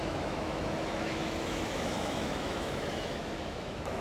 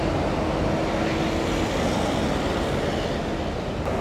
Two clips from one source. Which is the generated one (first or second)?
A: first